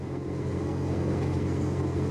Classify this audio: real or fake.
fake